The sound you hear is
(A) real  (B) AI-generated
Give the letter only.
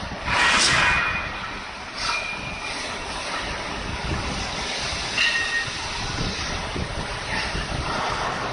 A